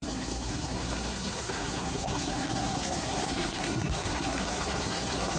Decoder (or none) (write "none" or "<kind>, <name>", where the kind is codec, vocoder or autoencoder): codec, SNAC